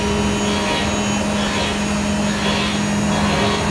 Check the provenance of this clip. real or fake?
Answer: real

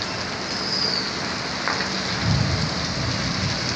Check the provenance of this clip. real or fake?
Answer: real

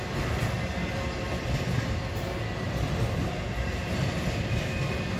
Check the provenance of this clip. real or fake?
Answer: real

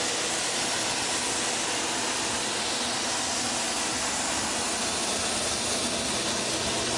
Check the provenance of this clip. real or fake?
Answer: real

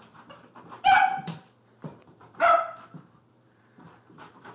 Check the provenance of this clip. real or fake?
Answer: fake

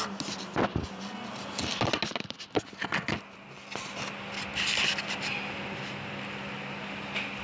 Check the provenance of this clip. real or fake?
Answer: real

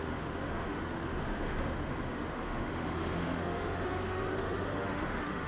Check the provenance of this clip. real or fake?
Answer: fake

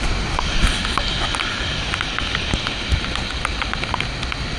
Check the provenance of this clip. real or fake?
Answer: real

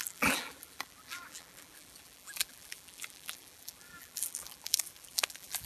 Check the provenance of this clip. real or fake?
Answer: fake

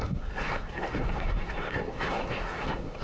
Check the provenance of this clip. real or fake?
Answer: fake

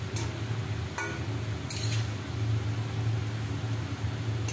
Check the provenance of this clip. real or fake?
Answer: real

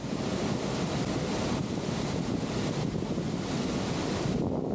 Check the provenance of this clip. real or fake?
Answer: real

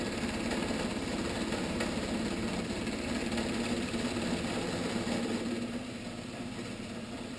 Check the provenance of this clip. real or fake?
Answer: fake